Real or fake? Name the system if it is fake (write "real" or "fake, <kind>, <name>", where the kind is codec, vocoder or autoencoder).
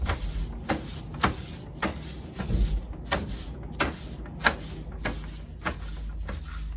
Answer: real